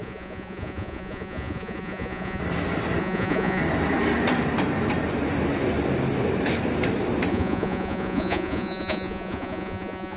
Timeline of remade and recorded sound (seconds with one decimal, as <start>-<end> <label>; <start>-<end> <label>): 0.0-2.4 remade; 2.4-3.0 recorded; 3.0-3.6 remade; 3.6-7.3 recorded; 7.3-10.2 remade